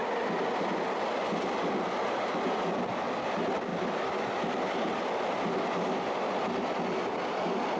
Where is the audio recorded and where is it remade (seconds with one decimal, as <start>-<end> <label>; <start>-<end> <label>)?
0.0-7.8 recorded